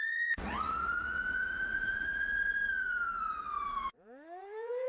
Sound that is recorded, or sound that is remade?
remade